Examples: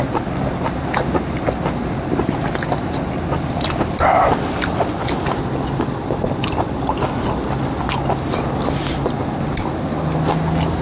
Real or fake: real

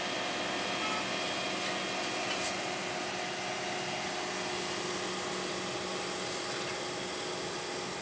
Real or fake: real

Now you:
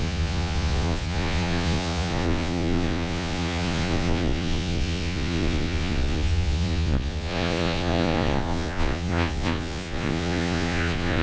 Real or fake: fake